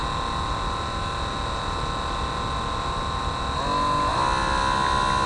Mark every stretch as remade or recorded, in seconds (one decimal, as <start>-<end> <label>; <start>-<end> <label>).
0.0-5.3 recorded